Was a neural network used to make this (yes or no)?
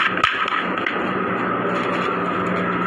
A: no